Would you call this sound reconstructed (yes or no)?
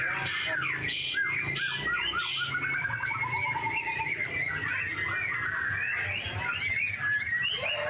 no